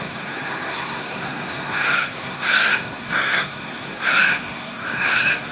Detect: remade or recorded remade